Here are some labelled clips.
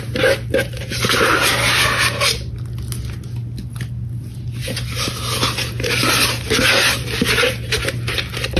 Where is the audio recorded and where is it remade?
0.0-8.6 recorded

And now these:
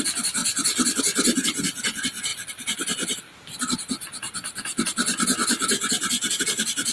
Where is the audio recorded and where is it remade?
0.0-6.9 recorded

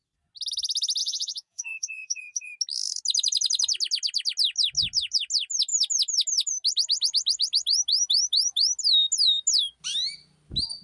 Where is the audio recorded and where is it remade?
0.0-1.0 recorded; 1.0-2.5 remade; 2.5-10.8 recorded

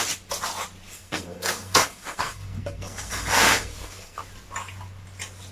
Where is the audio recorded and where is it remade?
0.0-0.9 recorded; 0.9-4.2 remade; 4.2-5.5 recorded

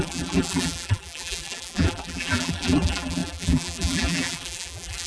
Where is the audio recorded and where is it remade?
0.0-5.1 remade

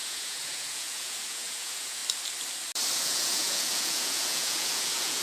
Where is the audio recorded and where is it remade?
0.0-2.0 remade; 2.0-3.0 recorded; 3.0-5.2 remade

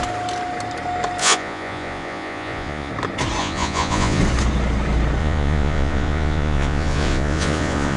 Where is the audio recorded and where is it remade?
0.0-1.2 recorded; 1.2-2.9 remade; 2.9-3.4 recorded; 3.4-4.2 remade; 4.2-5.2 recorded; 5.2-8.0 remade

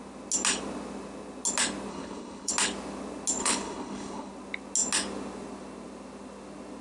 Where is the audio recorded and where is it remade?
0.0-1.9 recorded; 1.9-2.5 remade; 2.5-3.4 recorded; 3.4-4.3 remade; 4.3-6.8 recorded